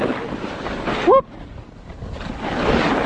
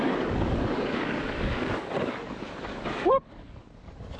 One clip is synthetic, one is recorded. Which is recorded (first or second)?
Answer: first